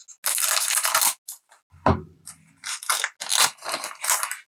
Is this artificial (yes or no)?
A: no